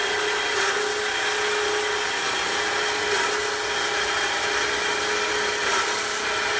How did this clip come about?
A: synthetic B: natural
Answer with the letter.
B